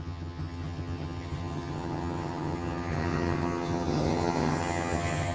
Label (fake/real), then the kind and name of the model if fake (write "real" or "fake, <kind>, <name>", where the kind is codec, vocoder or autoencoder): fake, vocoder, HiFi-GAN